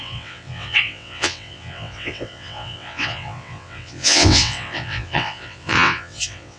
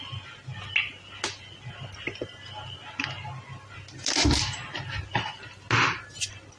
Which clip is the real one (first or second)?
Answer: second